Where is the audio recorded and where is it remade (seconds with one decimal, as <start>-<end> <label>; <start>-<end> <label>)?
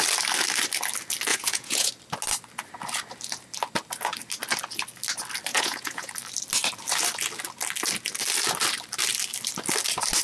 0.0-1.3 recorded; 1.3-1.9 remade; 1.9-5.5 recorded; 5.5-6.1 remade; 6.1-10.2 recorded